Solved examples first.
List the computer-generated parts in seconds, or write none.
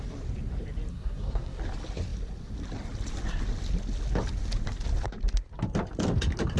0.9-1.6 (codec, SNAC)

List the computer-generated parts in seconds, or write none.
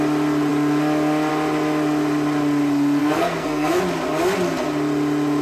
3.0-3.8 (codec, SNAC)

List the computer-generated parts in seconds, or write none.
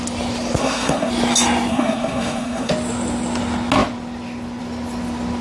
0.6-1.1 (codec, SNAC); 1.7-2.7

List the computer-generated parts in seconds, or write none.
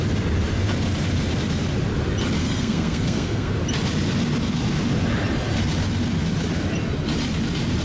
2.4-3.5 (codec, SNAC)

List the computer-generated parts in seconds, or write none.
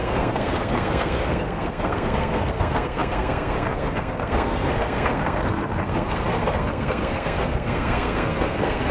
0.0-8.9 (codec, SNAC)